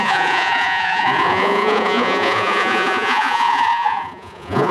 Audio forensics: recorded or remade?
remade